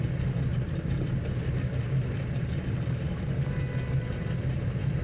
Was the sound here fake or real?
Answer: real